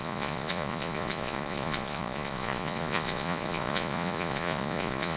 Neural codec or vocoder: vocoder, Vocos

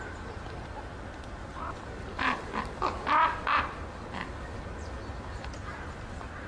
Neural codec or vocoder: none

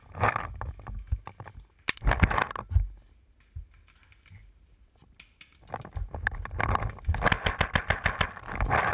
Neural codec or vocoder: none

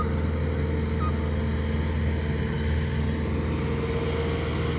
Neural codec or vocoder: none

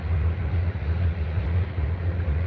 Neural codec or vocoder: vocoder, Vocos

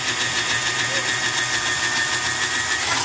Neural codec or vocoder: none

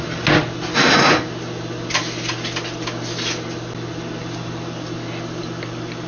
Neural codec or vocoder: none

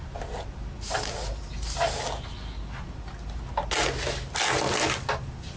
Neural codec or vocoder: none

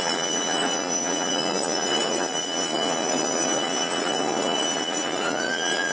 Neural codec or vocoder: vocoder, Vocos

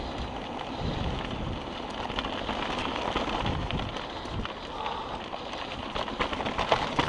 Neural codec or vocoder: none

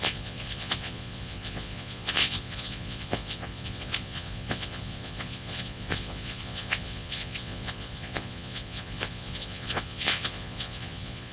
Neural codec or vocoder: vocoder, Vocos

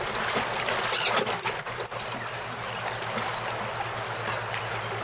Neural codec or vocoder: none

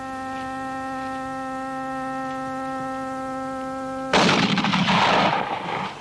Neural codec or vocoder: none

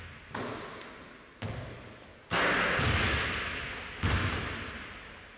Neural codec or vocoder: none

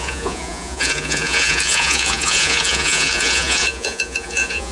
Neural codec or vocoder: vocoder, Vocos